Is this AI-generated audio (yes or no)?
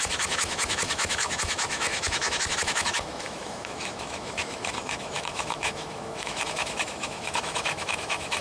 yes